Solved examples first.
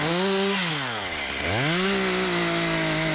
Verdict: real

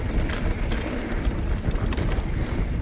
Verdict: real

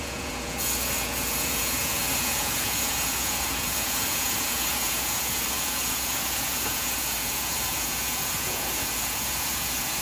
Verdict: fake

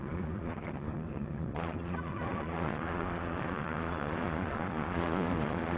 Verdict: fake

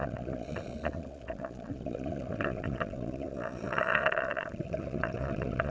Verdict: fake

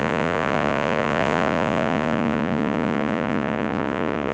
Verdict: fake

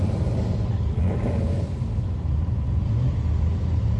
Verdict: real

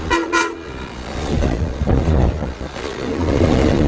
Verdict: fake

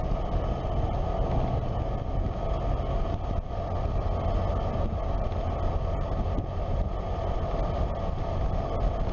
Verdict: real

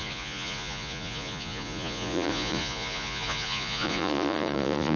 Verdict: fake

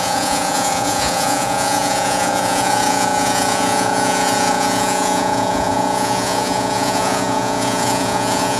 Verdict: fake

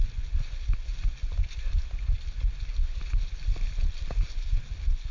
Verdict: real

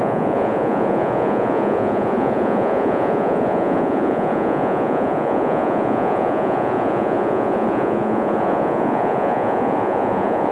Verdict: fake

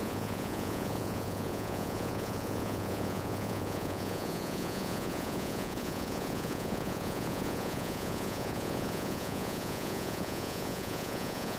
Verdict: fake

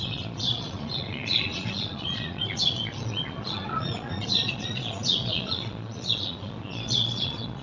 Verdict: fake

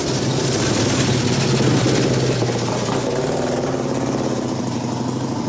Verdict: real